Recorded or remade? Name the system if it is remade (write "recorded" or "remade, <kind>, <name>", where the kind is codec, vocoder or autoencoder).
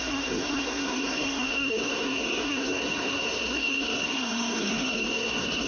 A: remade, codec, SNAC